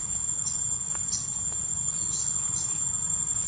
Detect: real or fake fake